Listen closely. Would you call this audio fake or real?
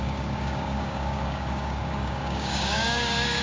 fake